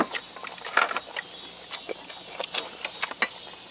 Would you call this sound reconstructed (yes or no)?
no